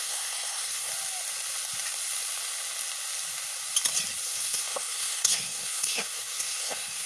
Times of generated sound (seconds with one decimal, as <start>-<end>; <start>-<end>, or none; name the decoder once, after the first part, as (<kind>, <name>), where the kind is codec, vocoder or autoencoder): 0.0-0.9 (codec, SNAC); 4.2-7.1